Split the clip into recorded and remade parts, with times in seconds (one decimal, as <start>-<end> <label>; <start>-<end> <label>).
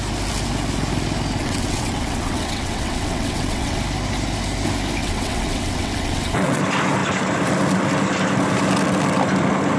0.0-1.4 recorded; 1.4-3.8 remade; 3.8-5.0 recorded; 5.0-6.6 remade; 6.6-9.8 recorded